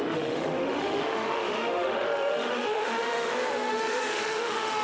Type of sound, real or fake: fake